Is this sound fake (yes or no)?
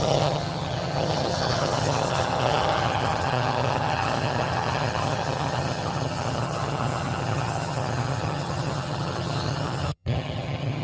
yes